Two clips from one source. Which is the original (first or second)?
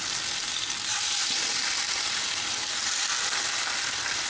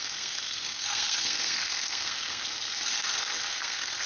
first